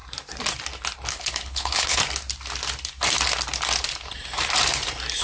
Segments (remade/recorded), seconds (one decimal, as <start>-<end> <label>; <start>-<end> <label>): 0.0-1.1 recorded; 1.1-2.0 remade; 2.0-5.2 recorded